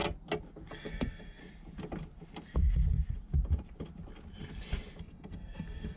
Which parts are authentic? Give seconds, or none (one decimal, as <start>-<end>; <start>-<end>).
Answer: 0.0-0.7; 1.4-5.0